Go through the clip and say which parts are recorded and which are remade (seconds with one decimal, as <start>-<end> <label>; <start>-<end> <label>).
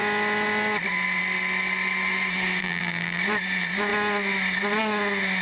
0.0-2.6 recorded; 2.6-3.2 remade; 3.2-5.4 recorded